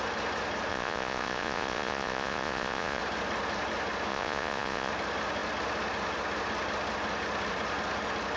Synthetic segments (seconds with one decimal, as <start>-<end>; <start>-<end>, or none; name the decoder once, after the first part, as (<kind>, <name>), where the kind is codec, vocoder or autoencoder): 0.7-3.0 (vocoder, Vocos); 4.1-4.9